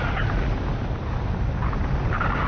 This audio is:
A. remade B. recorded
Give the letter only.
B